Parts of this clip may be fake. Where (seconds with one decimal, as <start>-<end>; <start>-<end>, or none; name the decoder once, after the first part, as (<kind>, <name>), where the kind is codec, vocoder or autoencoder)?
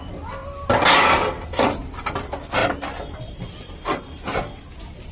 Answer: none